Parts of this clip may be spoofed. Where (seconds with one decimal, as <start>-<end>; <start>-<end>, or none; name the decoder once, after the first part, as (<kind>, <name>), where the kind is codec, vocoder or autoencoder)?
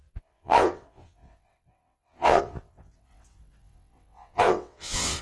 0.0-5.2 (vocoder, WaveNeXt)